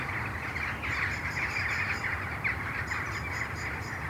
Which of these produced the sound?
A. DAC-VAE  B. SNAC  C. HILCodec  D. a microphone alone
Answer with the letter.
D